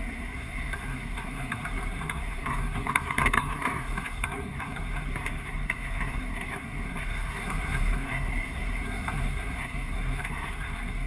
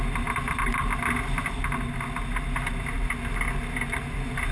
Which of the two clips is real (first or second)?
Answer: second